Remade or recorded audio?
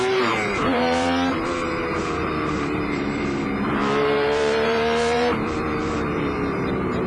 remade